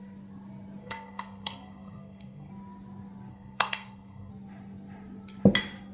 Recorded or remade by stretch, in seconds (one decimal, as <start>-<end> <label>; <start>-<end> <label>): 0.0-0.8 recorded; 0.8-2.5 remade; 2.5-3.3 recorded; 3.3-4.3 remade; 4.3-5.9 recorded